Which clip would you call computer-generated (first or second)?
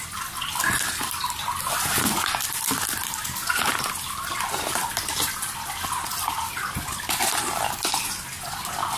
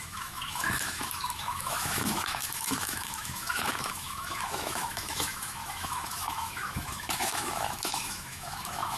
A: second